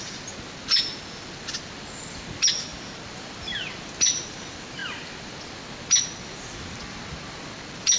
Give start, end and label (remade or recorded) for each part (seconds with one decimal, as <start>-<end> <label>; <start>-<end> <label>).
0.0-8.0 recorded